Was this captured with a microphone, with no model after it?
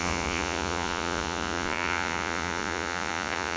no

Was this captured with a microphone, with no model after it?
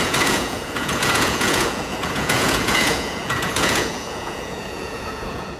no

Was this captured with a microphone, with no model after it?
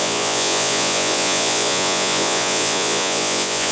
no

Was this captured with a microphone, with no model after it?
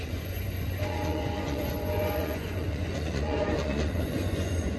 no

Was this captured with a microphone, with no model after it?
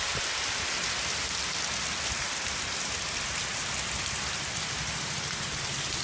yes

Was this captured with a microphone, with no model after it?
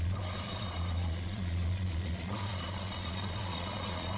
no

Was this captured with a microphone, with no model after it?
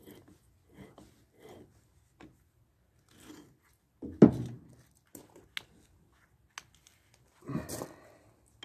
yes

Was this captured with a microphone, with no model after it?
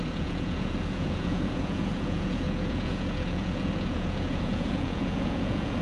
no